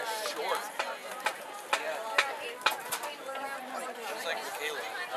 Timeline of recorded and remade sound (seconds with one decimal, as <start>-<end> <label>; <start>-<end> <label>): 0.0-0.5 recorded; 0.5-3.6 remade; 3.6-5.2 recorded